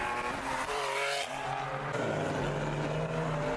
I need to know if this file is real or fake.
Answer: real